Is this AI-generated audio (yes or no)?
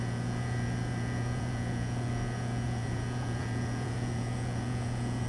yes